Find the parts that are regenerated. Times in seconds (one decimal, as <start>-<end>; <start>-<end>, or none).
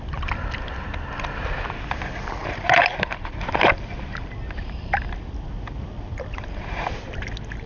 2.4-7.0